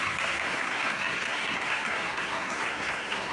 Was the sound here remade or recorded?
remade